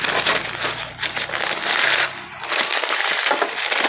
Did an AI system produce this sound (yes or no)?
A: no